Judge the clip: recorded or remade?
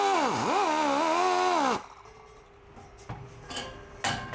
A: recorded